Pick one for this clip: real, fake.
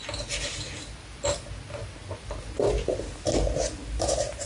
real